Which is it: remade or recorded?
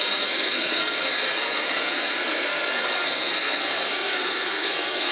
remade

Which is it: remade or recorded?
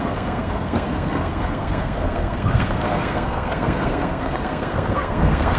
remade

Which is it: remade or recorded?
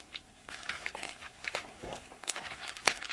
remade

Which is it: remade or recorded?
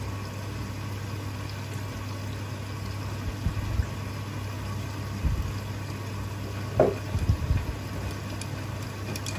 recorded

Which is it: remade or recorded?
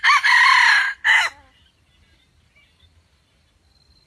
recorded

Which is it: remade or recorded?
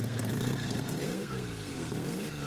remade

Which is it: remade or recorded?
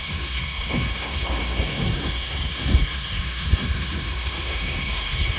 remade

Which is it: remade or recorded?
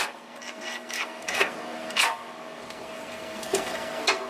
remade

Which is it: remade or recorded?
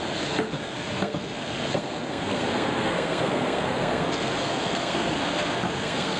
remade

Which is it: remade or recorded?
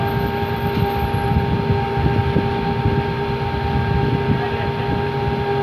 recorded